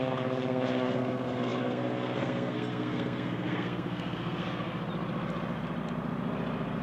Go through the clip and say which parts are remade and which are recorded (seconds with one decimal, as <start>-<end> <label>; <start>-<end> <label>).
0.0-4.7 remade; 4.7-6.8 recorded